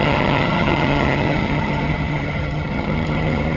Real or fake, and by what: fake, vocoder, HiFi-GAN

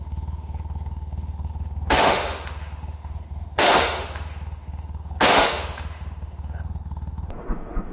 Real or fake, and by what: fake, autoencoder, DAC-VAE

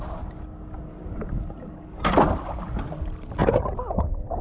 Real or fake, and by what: real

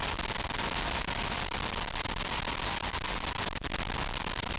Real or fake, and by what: real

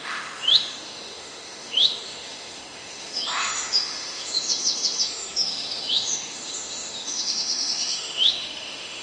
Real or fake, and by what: fake, autoencoder, DAC-VAE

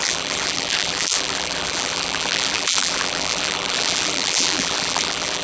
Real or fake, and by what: fake, vocoder, BigVGAN v2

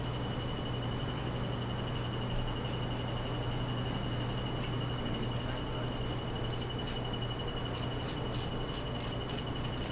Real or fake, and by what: real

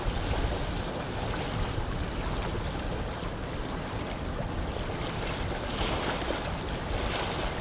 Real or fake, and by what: real